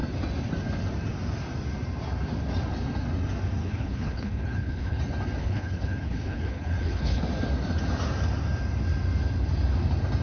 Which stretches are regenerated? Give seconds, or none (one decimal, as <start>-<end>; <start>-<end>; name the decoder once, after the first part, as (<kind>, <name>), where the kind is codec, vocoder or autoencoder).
3.6-5.0 (codec, HILCodec); 5.4-7.2